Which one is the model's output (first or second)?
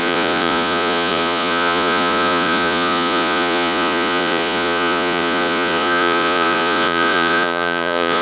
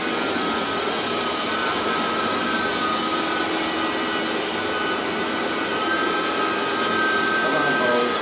first